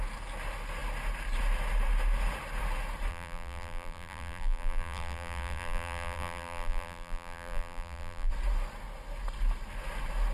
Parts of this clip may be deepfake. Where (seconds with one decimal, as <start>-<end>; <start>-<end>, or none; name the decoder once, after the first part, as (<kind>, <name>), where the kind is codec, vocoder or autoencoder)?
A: 3.1-8.3 (vocoder, BigVGAN v2)